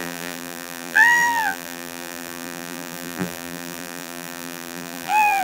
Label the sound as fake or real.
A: fake